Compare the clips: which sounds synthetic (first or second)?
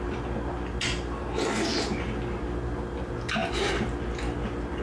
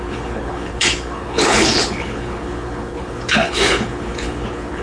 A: second